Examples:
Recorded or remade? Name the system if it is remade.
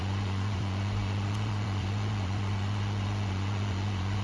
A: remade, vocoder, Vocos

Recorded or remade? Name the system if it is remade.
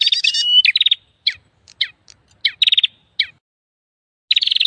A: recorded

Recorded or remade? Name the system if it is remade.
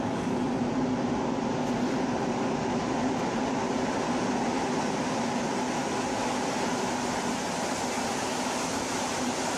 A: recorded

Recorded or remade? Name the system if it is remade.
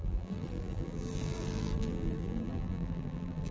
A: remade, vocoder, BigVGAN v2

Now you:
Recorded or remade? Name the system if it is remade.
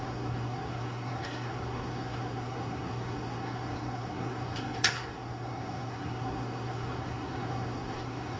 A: remade, codec, SNAC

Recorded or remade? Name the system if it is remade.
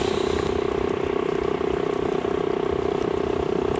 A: recorded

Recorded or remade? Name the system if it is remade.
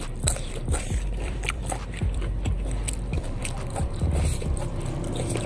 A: remade, vocoder, BigVGAN v2